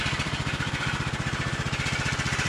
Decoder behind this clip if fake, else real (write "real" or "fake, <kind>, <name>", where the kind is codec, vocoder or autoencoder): fake, vocoder, BigVGAN v2